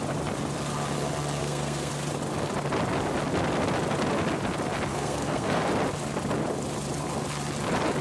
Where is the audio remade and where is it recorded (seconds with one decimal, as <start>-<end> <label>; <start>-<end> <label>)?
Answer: 0.0-1.4 recorded; 1.4-1.9 remade; 1.9-4.9 recorded; 4.9-5.6 remade; 5.6-8.0 recorded

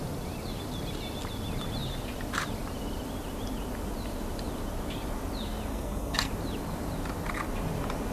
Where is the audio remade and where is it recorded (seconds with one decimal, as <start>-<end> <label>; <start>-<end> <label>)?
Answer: 0.0-5.7 recorded; 5.7-6.3 remade; 6.3-8.1 recorded

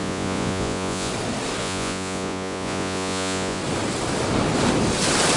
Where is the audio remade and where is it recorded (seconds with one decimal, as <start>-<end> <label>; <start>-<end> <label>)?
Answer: 0.0-1.1 remade; 1.1-1.6 recorded; 1.6-3.6 remade; 3.6-5.4 recorded

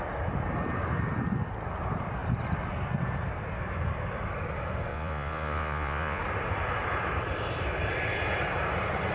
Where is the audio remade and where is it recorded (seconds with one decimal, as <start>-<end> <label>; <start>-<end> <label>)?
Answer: 0.0-4.9 recorded; 4.9-6.2 remade; 6.2-9.1 recorded